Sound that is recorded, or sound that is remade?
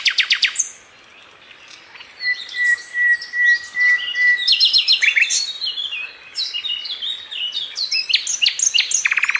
recorded